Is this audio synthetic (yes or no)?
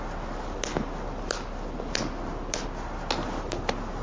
no